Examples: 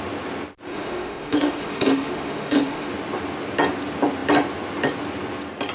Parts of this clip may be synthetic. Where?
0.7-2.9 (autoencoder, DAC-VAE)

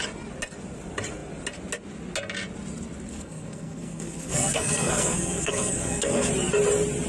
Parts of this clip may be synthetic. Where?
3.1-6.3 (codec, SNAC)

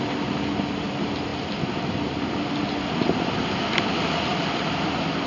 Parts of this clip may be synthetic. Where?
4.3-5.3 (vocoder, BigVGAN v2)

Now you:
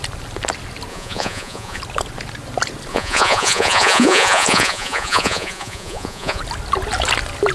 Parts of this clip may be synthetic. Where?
0.9-1.8 (vocoder, Vocos); 2.9-6.4

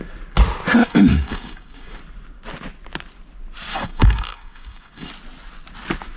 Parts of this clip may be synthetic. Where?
0.8-2.0 (codec, DAC); 3.7-5.1

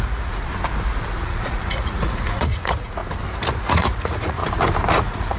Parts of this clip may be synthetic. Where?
0.0-0.5 (vocoder, Vocos); 1.2-3.0; 3.6-4.4; 4.9-5.4

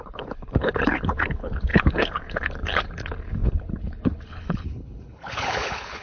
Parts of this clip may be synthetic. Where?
0.0-6.0 (codec, HILCodec)